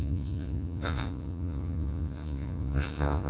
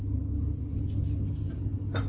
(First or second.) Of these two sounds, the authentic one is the second